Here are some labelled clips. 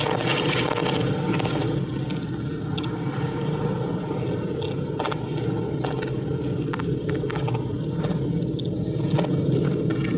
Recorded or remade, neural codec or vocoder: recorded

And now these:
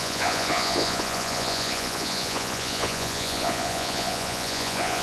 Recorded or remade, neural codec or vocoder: remade, vocoder, Vocos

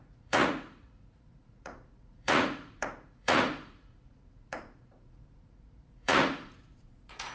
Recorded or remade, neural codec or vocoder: remade, vocoder, Vocos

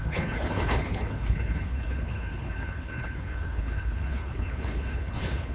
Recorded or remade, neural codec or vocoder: remade, codec, HILCodec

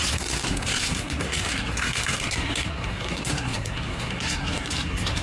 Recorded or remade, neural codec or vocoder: remade, codec, SNAC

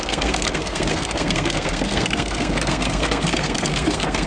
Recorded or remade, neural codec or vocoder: remade, codec, SNAC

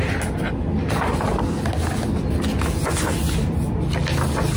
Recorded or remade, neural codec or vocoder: recorded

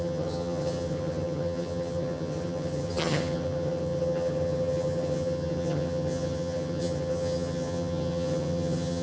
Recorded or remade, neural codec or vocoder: remade, vocoder, HiFi-GAN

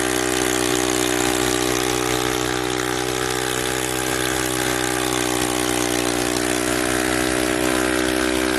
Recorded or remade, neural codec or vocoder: recorded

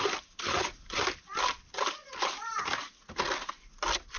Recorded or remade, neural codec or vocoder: recorded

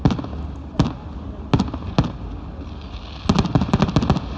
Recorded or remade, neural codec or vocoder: recorded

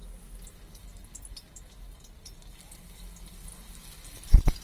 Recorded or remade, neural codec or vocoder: recorded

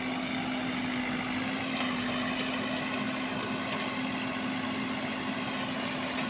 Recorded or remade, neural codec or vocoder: recorded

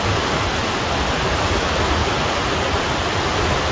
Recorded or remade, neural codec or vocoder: recorded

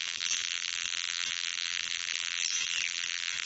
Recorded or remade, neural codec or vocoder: remade, vocoder, BigVGAN v2